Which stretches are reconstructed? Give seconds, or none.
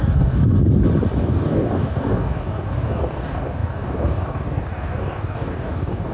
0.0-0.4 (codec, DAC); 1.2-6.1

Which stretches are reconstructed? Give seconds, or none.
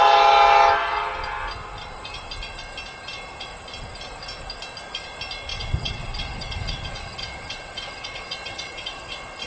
5.5-9.1 (vocoder, WaveNeXt)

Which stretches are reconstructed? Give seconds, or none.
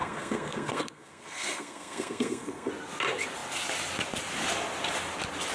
0.0-2.7 (codec, SNAC)